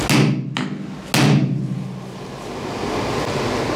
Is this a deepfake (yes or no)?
no